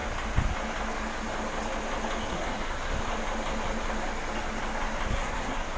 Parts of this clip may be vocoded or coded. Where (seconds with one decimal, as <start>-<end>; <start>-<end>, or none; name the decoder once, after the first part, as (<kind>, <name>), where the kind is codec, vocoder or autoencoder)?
2.3-2.9 (codec, SNAC); 5.1-5.8